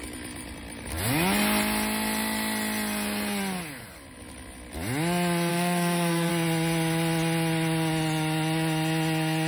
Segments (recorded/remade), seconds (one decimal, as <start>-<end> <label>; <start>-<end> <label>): 0.0-5.5 recorded; 5.5-6.3 remade; 6.3-9.5 recorded